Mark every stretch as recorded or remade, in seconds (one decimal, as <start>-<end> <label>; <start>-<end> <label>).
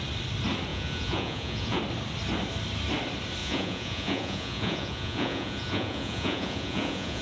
0.0-0.7 recorded; 0.7-1.8 remade; 1.8-3.4 recorded; 3.4-7.2 remade